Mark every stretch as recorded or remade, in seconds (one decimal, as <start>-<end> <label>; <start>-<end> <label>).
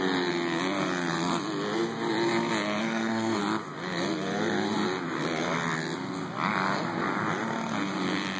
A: 0.0-2.8 recorded; 2.8-3.4 remade; 3.4-8.4 recorded